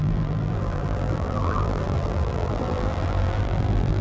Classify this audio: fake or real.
fake